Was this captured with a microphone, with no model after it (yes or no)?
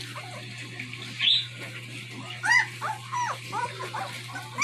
yes